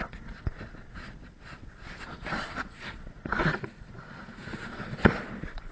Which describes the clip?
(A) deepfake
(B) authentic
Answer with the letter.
A